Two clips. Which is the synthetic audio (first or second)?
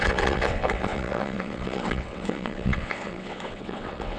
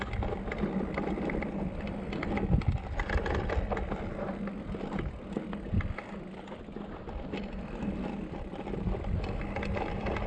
first